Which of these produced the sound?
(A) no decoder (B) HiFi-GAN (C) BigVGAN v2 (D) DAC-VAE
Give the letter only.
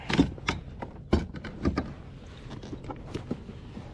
A